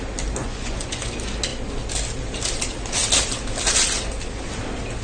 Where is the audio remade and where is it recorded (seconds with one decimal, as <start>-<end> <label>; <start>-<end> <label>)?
0.0-0.4 recorded; 0.4-1.1 remade; 1.1-5.0 recorded